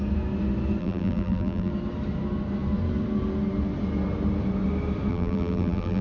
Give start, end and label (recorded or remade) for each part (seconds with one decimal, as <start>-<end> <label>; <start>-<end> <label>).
0.0-0.8 recorded; 0.8-1.7 remade; 1.7-5.1 recorded; 5.1-6.0 remade